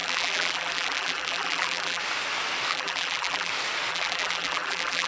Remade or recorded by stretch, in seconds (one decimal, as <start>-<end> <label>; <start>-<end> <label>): 0.0-2.0 remade; 2.0-2.7 recorded; 2.7-3.5 remade; 3.5-3.9 recorded; 3.9-5.1 remade